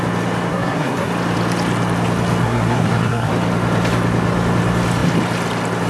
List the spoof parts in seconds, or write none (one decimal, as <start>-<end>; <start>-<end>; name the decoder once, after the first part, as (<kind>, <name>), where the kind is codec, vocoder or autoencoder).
0.5-1.1 (codec, SNAC); 2.4-3.3